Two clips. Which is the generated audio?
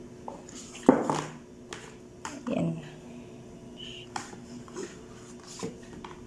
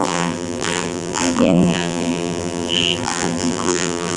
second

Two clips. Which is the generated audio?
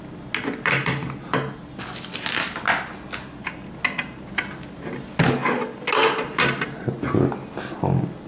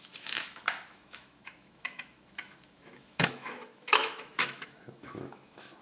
second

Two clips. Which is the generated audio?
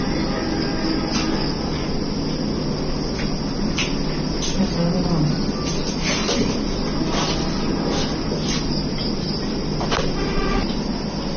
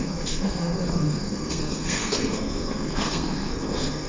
second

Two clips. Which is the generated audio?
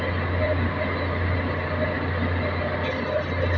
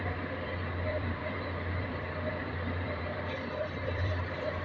second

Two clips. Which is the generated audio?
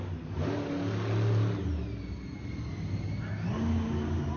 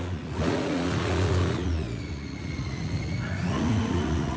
second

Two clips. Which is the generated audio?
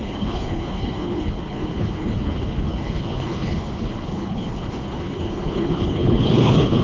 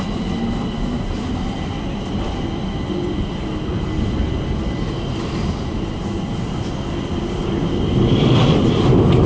first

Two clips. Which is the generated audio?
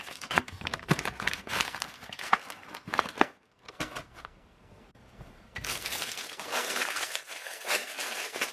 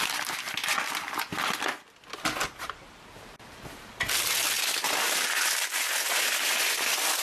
first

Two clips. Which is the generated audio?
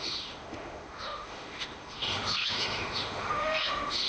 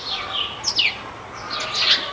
first